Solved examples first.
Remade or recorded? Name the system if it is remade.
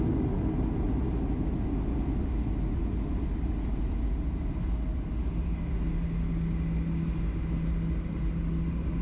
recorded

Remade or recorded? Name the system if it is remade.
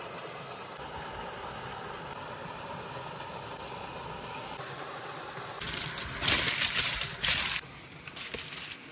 recorded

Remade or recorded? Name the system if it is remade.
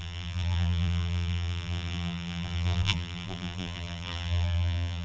remade, vocoder, BigVGAN v2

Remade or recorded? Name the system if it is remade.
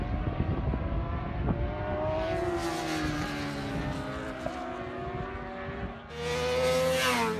recorded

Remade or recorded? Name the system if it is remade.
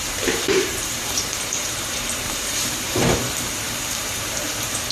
remade, vocoder, BigVGAN v2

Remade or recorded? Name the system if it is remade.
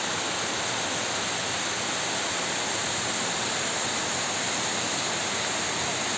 recorded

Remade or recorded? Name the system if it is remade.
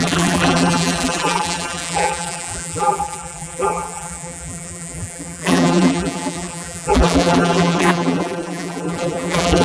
remade, vocoder, BigVGAN v2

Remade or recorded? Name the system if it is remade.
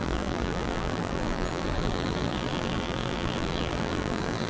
remade, vocoder, BigVGAN v2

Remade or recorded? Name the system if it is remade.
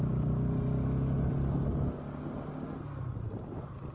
recorded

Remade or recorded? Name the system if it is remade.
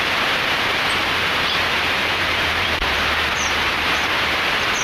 remade, vocoder, BigVGAN v2